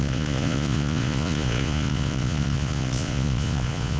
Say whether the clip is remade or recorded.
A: remade